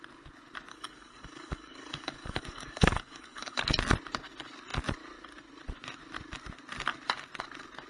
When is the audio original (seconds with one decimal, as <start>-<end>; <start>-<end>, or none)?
0.0-0.7; 3.6-7.9